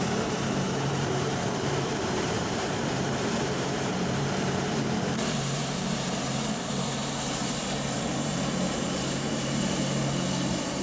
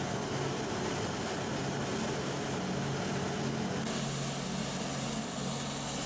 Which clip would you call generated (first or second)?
first